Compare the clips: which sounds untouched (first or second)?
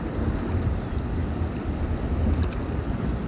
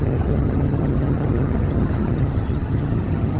first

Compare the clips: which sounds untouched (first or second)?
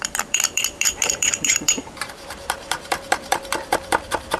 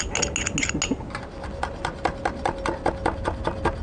second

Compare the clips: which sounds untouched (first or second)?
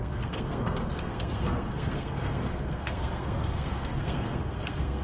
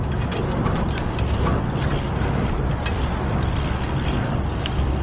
second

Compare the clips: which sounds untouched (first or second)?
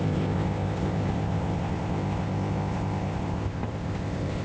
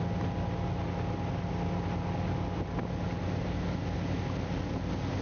second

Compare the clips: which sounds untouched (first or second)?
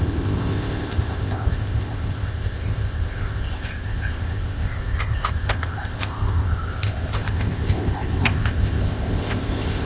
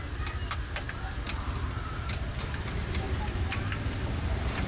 second